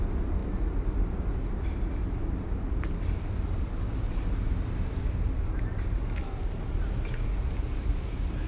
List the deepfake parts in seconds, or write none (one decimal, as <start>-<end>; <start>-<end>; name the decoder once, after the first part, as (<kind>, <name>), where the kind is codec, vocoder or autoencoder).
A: none